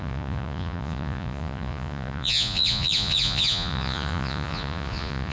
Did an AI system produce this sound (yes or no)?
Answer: yes